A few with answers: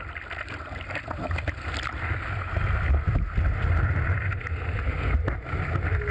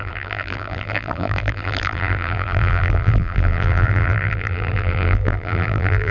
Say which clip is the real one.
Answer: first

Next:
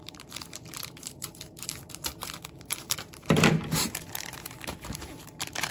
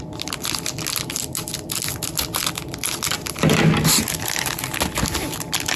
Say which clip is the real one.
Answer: second